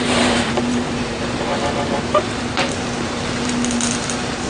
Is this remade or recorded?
remade